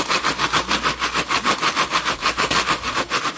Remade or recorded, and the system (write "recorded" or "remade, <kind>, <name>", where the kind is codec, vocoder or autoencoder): recorded